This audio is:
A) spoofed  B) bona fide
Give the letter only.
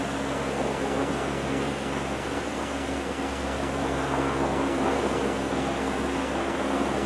A